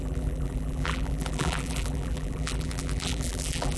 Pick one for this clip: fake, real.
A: fake